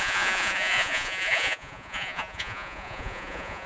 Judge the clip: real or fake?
fake